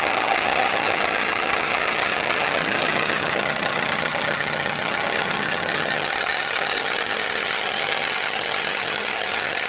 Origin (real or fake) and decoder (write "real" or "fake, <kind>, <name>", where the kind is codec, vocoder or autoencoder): fake, vocoder, HiFi-GAN